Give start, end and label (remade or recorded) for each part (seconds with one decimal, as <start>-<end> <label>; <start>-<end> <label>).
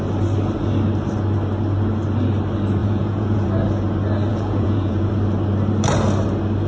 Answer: 0.0-2.8 recorded; 2.8-3.5 remade; 3.5-4.3 recorded; 4.3-5.1 remade; 5.1-6.7 recorded